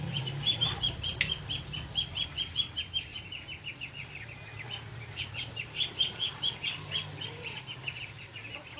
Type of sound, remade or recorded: recorded